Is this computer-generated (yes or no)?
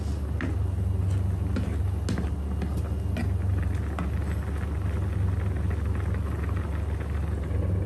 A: no